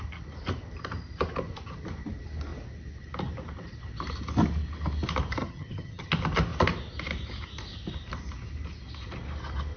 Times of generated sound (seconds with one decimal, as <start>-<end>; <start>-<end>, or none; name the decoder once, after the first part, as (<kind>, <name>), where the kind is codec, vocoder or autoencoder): 5.4-6.1 (vocoder, HiFi-GAN)